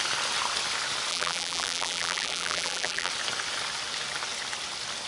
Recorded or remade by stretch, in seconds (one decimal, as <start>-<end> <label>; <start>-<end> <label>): 0.0-1.1 recorded; 1.1-3.1 remade; 3.1-5.1 recorded